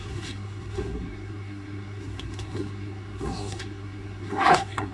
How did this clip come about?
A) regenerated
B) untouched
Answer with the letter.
A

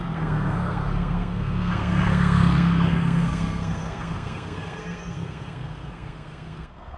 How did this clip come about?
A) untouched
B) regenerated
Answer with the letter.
B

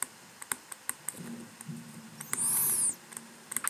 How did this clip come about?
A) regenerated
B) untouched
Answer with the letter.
B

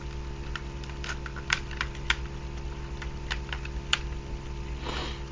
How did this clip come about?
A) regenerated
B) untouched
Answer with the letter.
B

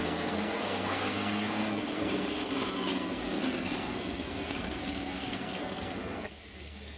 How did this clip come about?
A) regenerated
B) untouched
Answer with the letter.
A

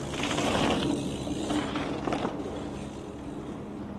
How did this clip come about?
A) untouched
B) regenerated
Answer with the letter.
A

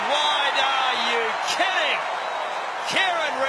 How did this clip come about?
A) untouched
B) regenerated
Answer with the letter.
A